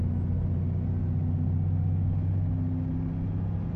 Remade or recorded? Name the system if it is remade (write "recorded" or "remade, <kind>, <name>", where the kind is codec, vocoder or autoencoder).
recorded